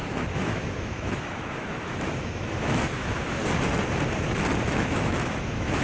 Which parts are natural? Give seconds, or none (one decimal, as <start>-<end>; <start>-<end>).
3.4-4.6